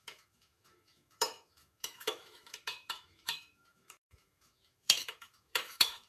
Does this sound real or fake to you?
fake